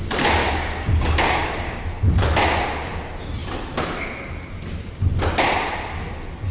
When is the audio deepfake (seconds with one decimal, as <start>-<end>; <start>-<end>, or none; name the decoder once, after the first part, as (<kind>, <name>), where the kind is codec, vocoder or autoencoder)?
0.4-1.8 (codec, DAC)